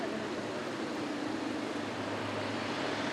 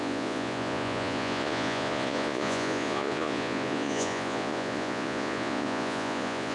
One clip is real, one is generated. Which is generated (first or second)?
second